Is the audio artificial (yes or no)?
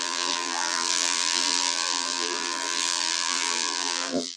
yes